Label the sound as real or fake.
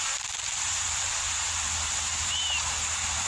fake